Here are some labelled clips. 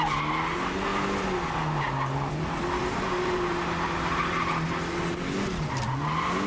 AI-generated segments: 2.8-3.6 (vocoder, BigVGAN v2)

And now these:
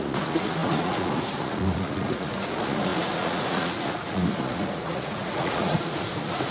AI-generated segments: 0.0-6.5 (vocoder, Vocos)